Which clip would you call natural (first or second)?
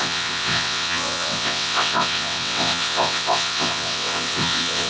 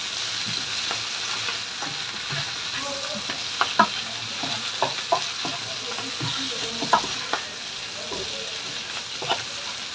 second